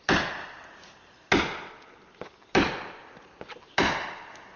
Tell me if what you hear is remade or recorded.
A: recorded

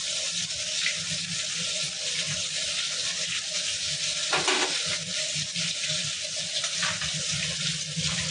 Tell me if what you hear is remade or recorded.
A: recorded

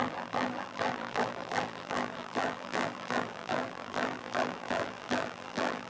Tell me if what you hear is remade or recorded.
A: remade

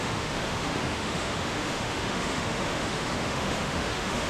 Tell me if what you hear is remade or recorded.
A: remade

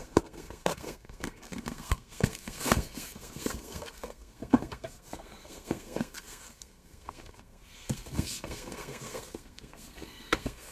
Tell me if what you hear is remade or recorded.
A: remade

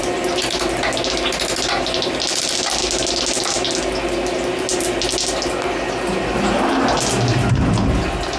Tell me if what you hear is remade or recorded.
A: recorded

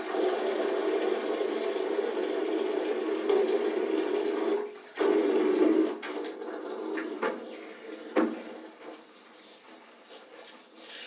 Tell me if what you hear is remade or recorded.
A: recorded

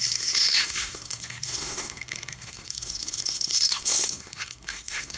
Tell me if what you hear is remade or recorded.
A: remade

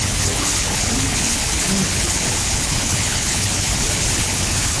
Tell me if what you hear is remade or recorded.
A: remade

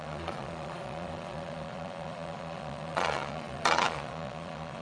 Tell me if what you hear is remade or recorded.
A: remade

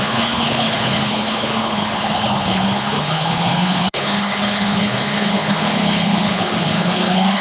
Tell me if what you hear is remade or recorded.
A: remade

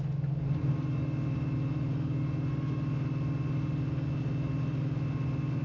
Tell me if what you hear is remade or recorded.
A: recorded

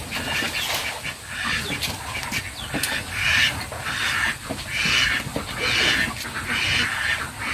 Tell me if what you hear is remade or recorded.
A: recorded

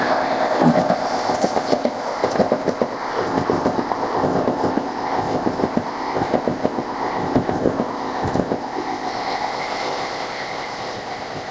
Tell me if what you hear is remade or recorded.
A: remade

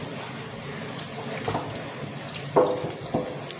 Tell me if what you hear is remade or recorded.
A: recorded